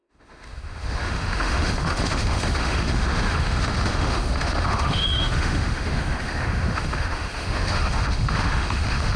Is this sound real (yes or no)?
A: no